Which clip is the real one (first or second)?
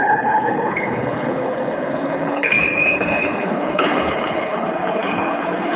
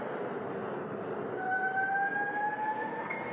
second